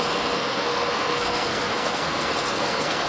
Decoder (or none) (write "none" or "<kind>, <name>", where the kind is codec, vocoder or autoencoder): codec, SNAC